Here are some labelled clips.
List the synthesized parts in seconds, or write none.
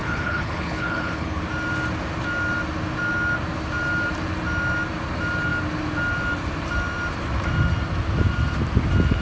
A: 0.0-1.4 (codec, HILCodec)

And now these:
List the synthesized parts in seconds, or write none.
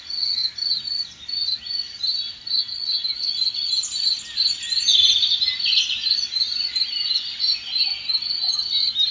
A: none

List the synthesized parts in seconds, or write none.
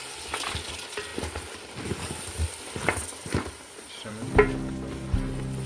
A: 3.2-4.1 (vocoder, BigVGAN v2)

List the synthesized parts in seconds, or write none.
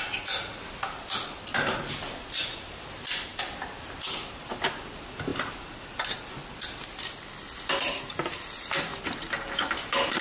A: 5.3-6.5 (vocoder, BigVGAN v2)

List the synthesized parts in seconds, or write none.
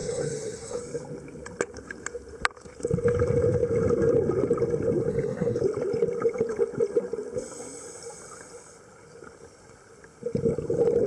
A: 0.0-0.8 (codec, SNAC); 5.1-5.6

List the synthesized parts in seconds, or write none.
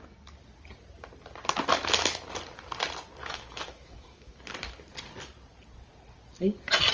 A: 3.2-4.4 (autoencoder, DAC-VAE)